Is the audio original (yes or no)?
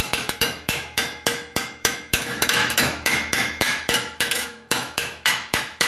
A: no